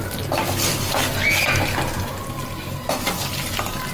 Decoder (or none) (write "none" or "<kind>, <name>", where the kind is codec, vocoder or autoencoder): none